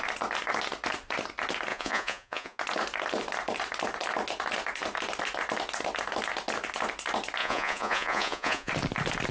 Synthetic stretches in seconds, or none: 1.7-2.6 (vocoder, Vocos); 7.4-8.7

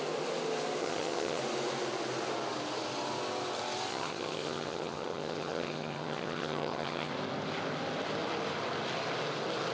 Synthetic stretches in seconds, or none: 0.8-1.4 (vocoder, HiFi-GAN); 3.9-7.1

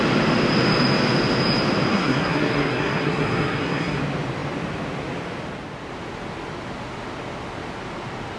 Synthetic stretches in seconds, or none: 1.9-4.0 (codec, SNAC)

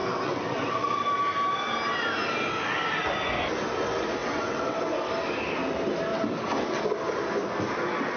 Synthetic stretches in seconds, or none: 0.0-1.0 (vocoder, WaveNeXt); 4.2-4.9; 6.1-6.8